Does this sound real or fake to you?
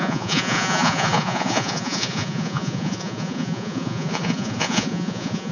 fake